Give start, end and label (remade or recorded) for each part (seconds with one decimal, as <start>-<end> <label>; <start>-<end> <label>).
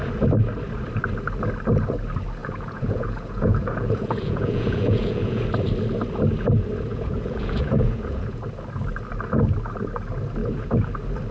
0.0-2.4 recorded; 2.4-5.4 remade; 5.4-6.9 recorded; 6.9-8.4 remade; 8.4-10.4 recorded; 10.4-10.9 remade; 10.9-11.3 recorded